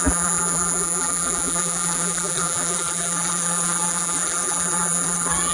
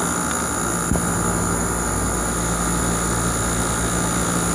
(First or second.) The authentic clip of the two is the second